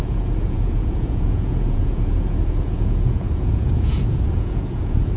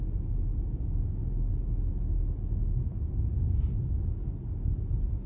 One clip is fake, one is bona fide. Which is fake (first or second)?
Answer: first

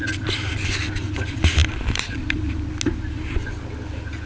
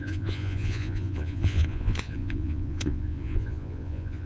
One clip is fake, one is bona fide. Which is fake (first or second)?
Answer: second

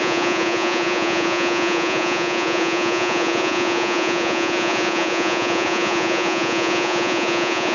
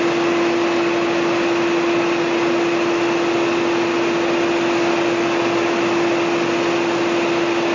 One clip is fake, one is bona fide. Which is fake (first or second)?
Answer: first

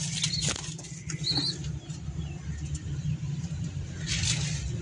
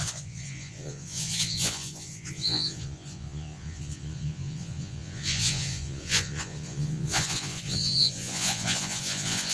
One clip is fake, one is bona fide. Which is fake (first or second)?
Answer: second